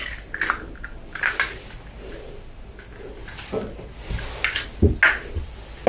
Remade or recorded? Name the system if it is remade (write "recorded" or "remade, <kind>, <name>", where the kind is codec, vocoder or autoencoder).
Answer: recorded